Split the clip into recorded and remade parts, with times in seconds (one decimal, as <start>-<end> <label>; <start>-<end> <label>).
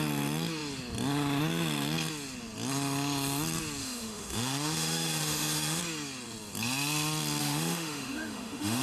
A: 0.0-3.8 recorded; 3.8-5.8 remade; 5.8-7.4 recorded; 7.4-8.8 remade